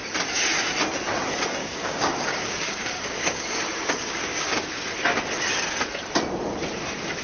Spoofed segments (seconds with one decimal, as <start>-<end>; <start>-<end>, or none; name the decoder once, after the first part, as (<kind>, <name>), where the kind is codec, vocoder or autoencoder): 1.6-4.8 (codec, DAC)

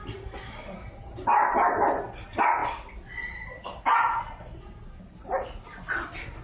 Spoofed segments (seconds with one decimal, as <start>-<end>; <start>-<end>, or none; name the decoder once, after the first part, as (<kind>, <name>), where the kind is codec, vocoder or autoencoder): none

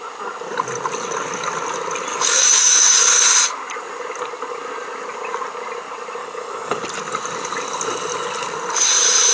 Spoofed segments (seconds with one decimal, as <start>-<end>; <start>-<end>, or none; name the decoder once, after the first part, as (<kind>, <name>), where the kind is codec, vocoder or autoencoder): 2.1-3.2 (codec, DAC); 6.2-6.8